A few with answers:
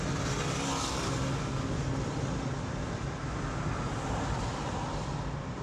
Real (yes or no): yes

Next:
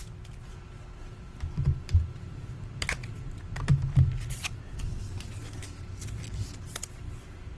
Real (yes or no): yes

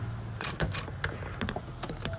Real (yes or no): yes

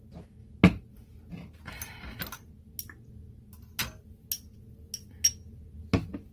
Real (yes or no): yes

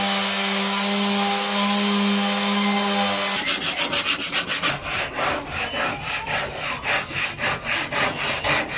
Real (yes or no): yes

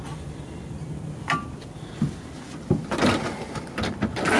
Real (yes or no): yes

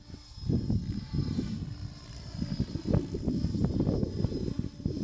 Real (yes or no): yes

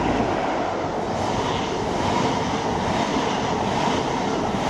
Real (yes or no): yes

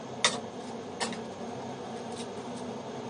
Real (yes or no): yes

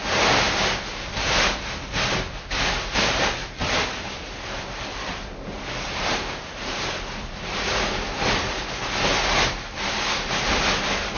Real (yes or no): yes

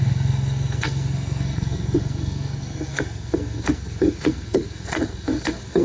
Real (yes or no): no